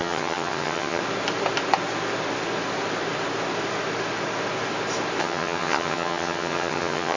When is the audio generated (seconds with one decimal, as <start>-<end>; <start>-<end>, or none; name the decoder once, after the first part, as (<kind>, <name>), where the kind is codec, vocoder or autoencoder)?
0.0-1.0 (vocoder, HiFi-GAN); 5.2-7.2